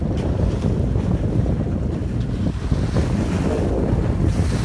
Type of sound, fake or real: real